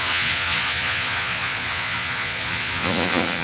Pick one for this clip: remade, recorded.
remade